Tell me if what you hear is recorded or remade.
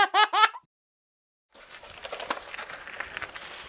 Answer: recorded